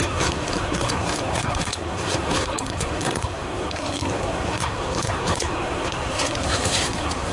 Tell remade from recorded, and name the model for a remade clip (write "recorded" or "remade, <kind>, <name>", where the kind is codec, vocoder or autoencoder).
remade, codec, SNAC